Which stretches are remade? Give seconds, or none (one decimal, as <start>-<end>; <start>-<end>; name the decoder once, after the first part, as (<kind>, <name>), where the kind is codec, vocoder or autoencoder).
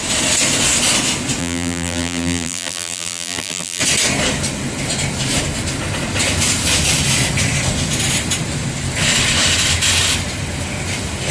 1.4-3.8 (vocoder, BigVGAN v2)